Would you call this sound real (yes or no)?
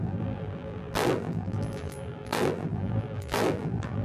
no